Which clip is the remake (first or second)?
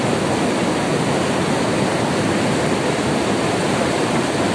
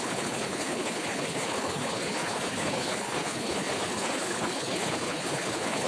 second